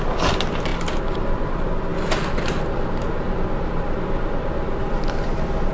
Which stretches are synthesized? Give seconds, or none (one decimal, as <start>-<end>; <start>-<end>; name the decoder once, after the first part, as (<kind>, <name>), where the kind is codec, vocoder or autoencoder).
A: none